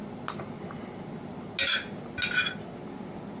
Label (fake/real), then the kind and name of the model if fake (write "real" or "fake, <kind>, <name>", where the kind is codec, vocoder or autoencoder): real